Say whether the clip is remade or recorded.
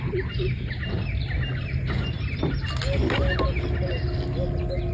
recorded